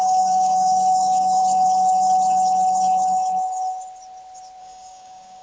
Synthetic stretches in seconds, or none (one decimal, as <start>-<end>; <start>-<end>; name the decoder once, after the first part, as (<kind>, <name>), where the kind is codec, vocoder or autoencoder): 0.0-1.4 (codec, DAC); 4.6-5.4